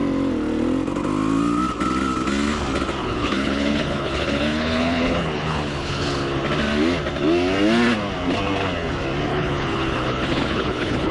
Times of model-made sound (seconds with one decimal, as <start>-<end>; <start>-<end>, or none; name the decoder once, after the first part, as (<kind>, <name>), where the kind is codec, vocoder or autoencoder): 3.0-6.4 (codec, HILCodec); 9.3-11.1